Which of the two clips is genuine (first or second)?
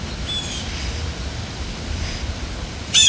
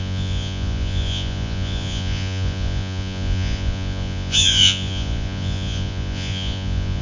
first